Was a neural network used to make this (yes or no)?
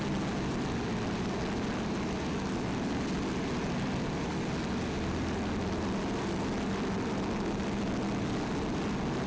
no